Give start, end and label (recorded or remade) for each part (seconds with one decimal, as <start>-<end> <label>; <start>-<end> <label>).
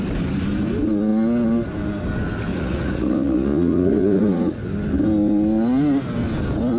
0.0-2.5 recorded; 2.5-4.6 remade; 4.6-6.8 recorded